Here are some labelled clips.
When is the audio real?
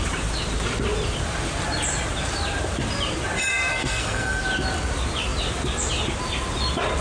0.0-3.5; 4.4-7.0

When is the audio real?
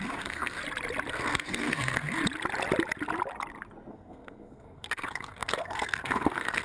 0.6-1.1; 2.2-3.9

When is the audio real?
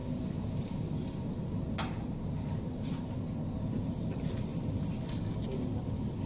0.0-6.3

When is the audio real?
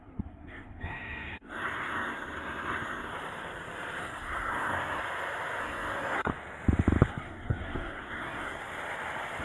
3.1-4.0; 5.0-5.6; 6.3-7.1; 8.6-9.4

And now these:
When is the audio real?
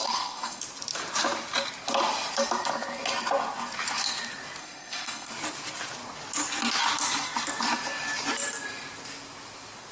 0.6-4.6; 5.3-9.9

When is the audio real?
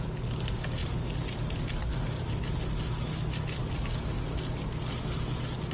0.0-5.7